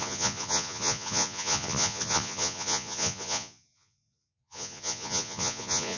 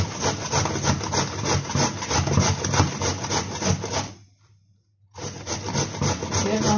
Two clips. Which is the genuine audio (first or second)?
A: second